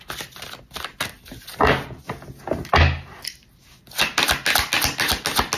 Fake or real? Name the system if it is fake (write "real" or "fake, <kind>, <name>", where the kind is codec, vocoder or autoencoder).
real